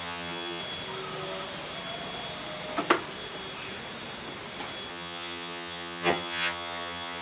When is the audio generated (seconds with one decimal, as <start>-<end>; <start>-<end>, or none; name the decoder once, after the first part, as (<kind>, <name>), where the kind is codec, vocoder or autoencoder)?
0.0-0.6 (vocoder, HiFi-GAN); 4.9-7.2